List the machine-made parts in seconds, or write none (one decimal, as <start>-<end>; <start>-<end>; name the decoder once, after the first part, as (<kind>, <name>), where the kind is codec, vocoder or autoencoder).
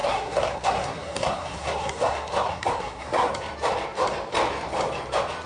0.0-3.3 (codec, SNAC)